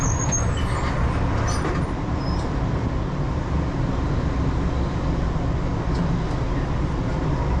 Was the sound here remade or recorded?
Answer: recorded